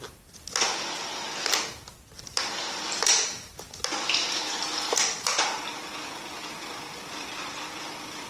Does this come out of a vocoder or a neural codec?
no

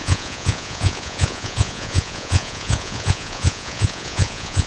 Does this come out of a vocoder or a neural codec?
yes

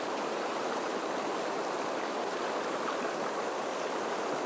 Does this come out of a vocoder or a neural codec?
no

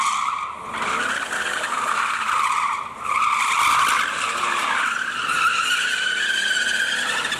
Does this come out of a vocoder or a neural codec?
no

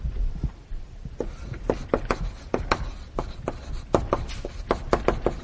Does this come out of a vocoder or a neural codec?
no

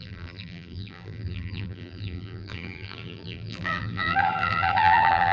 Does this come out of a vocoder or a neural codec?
yes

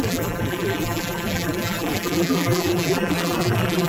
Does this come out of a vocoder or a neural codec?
yes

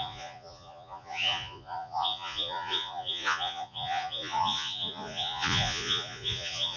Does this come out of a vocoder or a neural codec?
yes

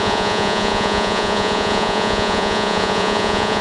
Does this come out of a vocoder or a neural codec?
yes